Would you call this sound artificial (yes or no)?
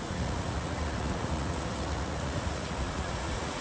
yes